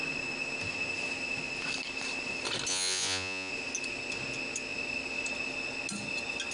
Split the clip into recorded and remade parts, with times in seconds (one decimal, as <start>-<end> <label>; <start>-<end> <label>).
0.0-2.7 recorded; 2.7-3.5 remade; 3.5-6.5 recorded

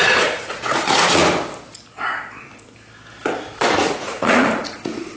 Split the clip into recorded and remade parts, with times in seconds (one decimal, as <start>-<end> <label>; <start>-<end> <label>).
0.0-1.2 remade; 1.2-3.7 recorded; 3.7-5.2 remade

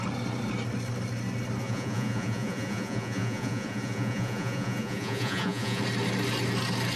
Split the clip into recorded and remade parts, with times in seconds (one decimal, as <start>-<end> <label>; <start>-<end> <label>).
0.0-1.6 recorded; 1.6-5.8 remade; 5.8-7.0 recorded

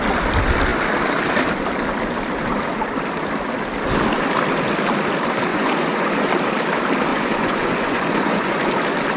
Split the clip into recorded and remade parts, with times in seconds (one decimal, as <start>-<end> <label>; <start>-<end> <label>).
0.0-5.5 recorded; 5.5-6.3 remade; 6.3-7.1 recorded; 7.1-8.7 remade; 8.7-9.2 recorded

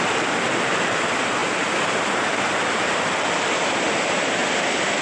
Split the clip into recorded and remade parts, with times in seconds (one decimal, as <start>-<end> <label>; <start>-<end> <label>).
0.0-5.0 recorded